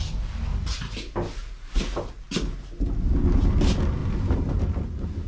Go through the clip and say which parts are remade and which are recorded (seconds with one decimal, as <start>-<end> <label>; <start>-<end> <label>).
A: 0.0-1.4 recorded; 1.4-2.3 remade; 2.3-4.0 recorded; 4.0-4.6 remade; 4.6-5.3 recorded

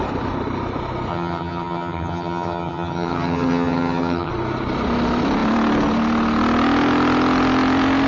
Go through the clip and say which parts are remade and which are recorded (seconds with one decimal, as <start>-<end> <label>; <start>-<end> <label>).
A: 0.0-1.1 recorded; 1.1-4.3 remade; 4.3-8.1 recorded

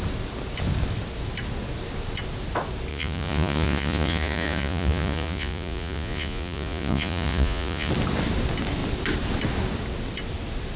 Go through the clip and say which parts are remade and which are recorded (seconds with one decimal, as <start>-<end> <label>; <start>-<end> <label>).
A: 0.0-2.9 recorded; 2.9-7.9 remade; 7.9-10.8 recorded

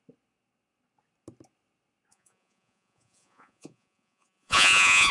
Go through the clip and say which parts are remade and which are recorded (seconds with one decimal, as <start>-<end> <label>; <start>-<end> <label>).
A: 0.0-2.1 recorded; 2.1-5.1 remade

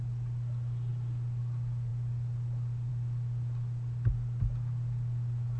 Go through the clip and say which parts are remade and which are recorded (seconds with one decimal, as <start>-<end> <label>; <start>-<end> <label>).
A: 0.0-5.6 recorded

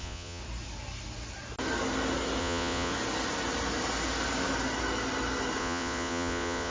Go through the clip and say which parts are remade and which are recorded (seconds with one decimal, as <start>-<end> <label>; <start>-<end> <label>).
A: 0.0-0.4 remade; 0.4-2.4 recorded; 2.4-2.9 remade; 2.9-5.6 recorded; 5.6-6.7 remade

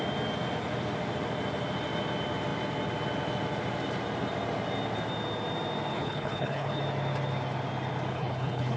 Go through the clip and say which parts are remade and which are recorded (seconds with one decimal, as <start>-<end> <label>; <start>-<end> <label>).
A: 0.0-5.9 recorded; 5.9-6.8 remade; 6.8-8.1 recorded; 8.1-8.8 remade

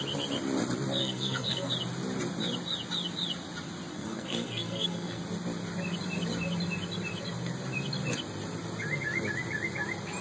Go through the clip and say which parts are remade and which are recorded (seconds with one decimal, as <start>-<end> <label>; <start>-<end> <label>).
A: 0.0-1.0 recorded; 1.0-1.7 remade; 1.7-3.9 recorded; 3.9-5.2 remade; 5.2-10.2 recorded